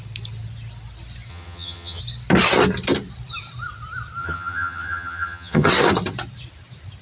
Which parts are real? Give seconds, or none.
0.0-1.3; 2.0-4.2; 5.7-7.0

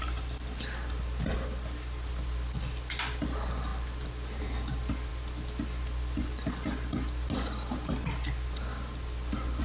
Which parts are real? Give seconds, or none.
0.0-9.6

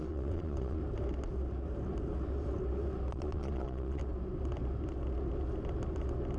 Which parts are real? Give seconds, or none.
0.8-3.1; 4.0-6.4

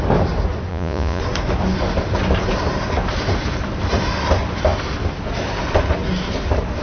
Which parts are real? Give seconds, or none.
0.0-0.7; 1.2-6.8

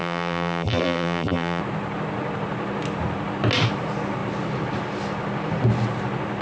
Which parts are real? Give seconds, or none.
1.6-6.4

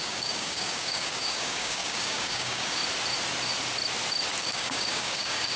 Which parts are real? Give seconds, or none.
2.8-4.4